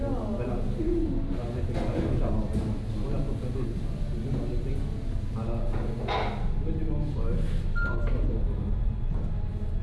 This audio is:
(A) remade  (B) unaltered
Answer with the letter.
B